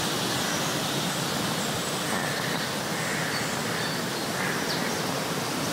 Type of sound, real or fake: real